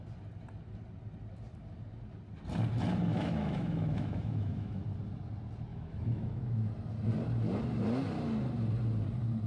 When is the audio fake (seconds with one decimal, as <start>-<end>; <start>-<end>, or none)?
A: 3.1-4.8; 5.7-6.7